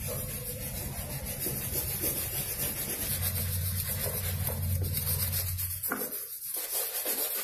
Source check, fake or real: real